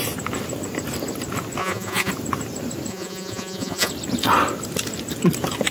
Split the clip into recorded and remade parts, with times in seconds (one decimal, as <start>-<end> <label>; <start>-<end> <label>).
0.0-1.6 recorded; 1.6-2.1 remade; 2.1-2.9 recorded; 2.9-3.9 remade; 3.9-5.7 recorded